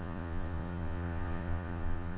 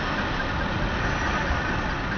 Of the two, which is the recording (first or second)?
second